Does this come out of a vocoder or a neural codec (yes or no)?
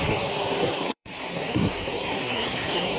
yes